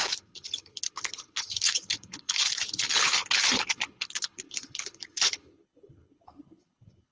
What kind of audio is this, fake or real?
fake